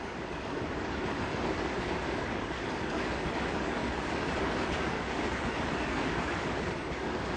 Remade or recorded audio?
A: remade